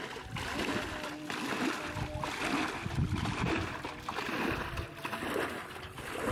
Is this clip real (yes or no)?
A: yes